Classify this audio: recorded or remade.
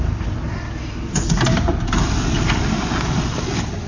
remade